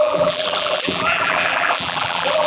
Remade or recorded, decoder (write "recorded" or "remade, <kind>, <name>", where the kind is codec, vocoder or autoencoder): remade, vocoder, BigVGAN v2